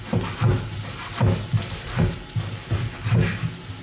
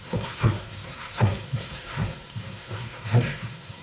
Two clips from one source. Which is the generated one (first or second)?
second